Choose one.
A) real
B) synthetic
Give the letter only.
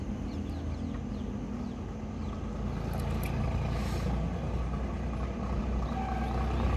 A